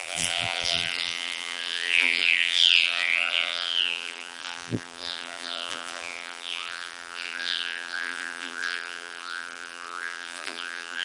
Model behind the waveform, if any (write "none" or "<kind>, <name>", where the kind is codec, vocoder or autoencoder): vocoder, BigVGAN v2